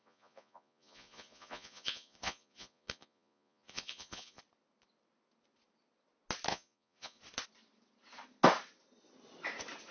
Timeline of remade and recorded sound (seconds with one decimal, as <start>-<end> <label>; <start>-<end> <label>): 0.0-4.4 remade; 4.4-6.5 recorded; 6.5-7.2 remade; 7.2-9.9 recorded